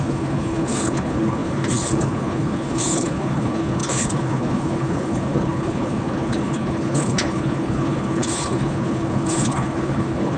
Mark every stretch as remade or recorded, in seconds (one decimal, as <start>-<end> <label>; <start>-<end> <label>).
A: 0.0-10.4 remade